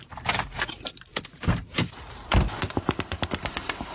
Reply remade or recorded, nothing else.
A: remade